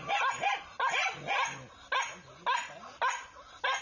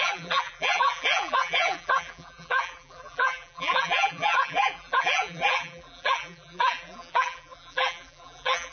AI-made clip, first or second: second